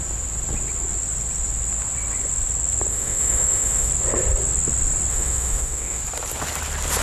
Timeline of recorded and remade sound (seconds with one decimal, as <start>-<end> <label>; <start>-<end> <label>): 0.0-2.9 recorded; 2.9-3.9 remade; 3.9-5.1 recorded; 5.1-6.0 remade; 6.0-7.0 recorded